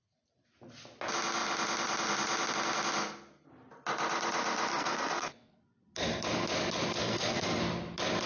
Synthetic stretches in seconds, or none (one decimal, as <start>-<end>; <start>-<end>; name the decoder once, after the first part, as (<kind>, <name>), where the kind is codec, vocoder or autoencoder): 4.7-5.6 (codec, SNAC); 7.0-7.6